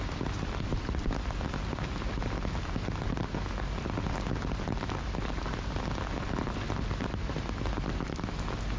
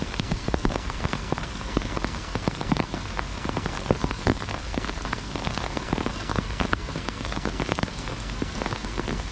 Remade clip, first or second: second